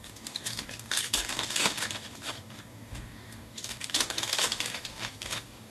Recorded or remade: remade